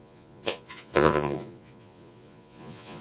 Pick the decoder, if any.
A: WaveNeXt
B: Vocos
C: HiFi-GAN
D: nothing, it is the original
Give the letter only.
B